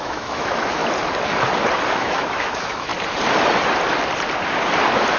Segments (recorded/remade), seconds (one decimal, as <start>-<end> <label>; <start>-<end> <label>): 0.0-0.8 remade; 0.8-1.9 recorded; 1.9-2.9 remade; 2.9-5.2 recorded